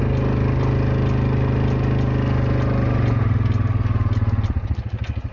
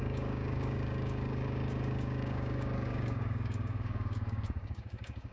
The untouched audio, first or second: first